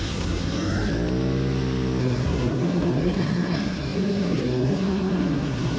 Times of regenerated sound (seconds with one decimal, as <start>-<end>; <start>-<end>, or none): 0.0-0.9; 2.0-5.8